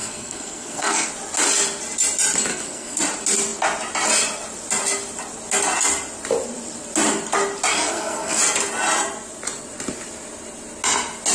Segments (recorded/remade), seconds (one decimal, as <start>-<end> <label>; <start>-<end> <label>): 0.0-1.1 remade; 1.1-2.5 recorded; 2.5-3.0 remade; 3.0-7.7 recorded; 7.7-8.4 remade; 8.4-11.3 recorded